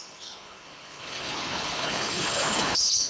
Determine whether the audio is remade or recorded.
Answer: remade